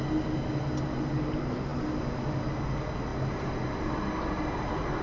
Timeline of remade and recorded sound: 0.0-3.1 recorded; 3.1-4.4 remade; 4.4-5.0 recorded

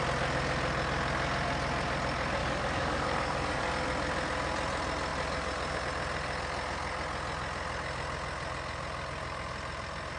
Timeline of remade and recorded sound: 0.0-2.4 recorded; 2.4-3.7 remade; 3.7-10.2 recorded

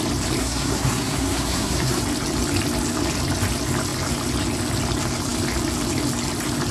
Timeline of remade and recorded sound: 0.0-0.4 recorded; 0.4-2.0 remade; 2.0-6.7 recorded